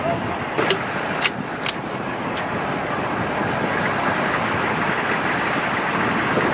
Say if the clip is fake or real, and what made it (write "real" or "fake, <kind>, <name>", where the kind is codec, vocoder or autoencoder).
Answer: real